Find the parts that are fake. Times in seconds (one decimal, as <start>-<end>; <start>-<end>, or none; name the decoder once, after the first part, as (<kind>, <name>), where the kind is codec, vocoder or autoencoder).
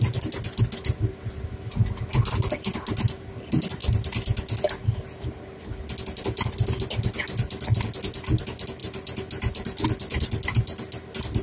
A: none